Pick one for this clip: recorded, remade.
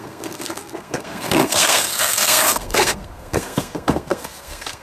remade